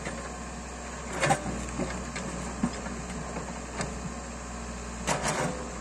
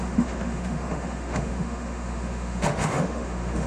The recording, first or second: first